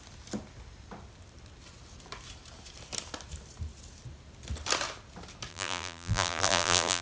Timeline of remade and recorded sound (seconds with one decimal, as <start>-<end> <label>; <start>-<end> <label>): 0.0-5.5 recorded; 5.5-7.0 remade